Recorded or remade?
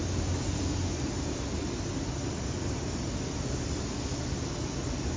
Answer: recorded